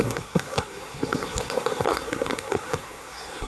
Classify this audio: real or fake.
fake